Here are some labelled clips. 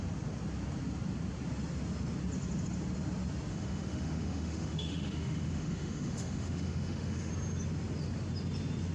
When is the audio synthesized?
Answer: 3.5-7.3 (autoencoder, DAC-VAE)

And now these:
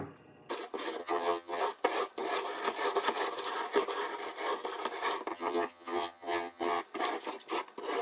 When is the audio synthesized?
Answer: 1.0-1.6 (vocoder, HiFi-GAN); 5.3-6.8